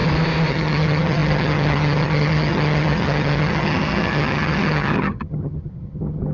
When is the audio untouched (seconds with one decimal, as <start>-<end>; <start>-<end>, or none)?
0.0-0.5